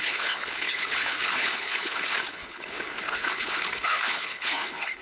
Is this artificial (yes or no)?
yes